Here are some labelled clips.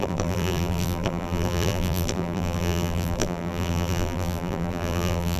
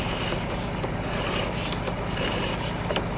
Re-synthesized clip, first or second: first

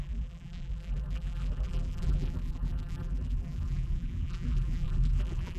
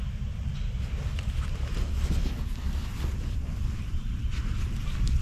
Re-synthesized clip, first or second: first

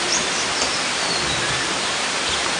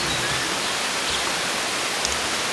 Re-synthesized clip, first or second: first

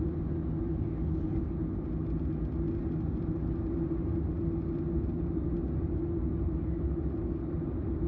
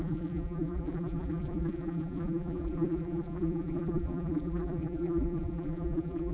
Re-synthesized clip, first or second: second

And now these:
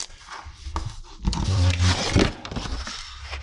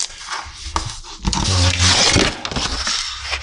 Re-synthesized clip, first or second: first